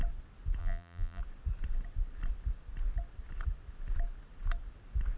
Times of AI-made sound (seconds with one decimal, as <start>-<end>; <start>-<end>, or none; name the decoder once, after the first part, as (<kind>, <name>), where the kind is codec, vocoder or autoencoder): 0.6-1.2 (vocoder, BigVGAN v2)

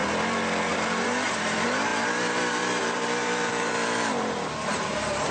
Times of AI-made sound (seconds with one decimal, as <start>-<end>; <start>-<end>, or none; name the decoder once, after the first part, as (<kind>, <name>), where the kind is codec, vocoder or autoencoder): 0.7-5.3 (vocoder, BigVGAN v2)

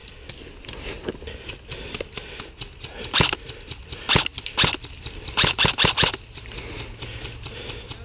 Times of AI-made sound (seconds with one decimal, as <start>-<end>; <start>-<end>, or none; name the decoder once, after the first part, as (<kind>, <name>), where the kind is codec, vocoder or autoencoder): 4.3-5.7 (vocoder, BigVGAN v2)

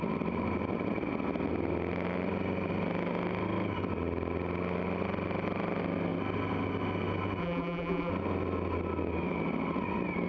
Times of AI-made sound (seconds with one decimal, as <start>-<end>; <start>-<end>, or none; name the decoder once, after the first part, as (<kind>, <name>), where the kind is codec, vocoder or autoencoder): 7.4-8.1 (vocoder, BigVGAN v2)